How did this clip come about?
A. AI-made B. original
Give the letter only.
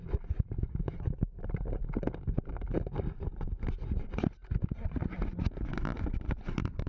B